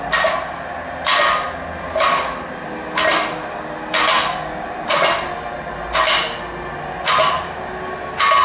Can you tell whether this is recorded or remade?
recorded